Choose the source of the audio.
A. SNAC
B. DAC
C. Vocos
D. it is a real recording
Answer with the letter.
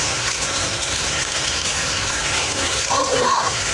A